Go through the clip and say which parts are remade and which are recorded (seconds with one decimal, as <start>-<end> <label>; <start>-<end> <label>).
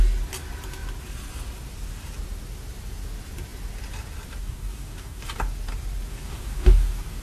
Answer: 0.0-4.4 recorded; 4.4-5.2 remade; 5.2-6.1 recorded; 6.1-7.2 remade